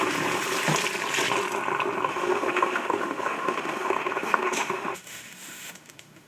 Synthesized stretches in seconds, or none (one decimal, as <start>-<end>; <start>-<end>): 2.1-6.3